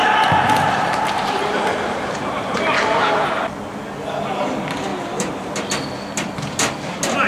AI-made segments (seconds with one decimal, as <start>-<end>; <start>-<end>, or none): 0.0-3.3; 4.9-5.5